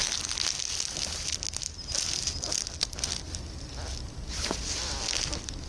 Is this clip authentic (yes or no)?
yes